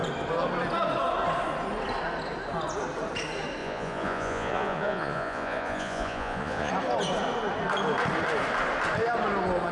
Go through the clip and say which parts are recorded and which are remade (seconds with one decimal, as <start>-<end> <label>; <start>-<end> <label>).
0.0-3.6 recorded; 3.6-6.7 remade; 6.7-9.7 recorded